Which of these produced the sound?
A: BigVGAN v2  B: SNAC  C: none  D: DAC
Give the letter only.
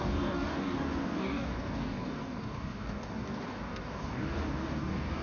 D